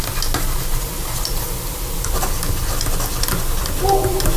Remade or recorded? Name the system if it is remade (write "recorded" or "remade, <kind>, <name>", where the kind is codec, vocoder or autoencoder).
recorded